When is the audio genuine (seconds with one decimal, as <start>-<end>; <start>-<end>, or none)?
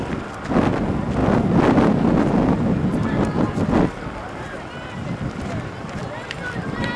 0.0-7.0